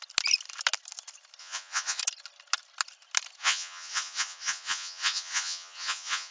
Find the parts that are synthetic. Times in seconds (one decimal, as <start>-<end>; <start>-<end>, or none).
1.4-2.0; 3.4-6.3